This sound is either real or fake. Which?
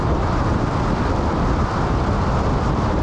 real